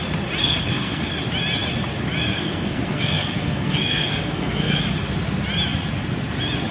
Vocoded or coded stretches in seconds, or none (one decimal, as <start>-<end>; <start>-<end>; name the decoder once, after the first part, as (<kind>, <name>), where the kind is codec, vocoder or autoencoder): 0.4-1.1 (codec, SNAC); 2.3-4.8